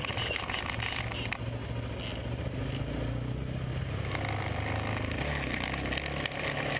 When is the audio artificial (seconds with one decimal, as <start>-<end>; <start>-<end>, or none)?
none